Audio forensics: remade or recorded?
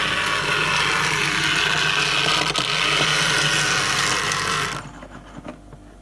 recorded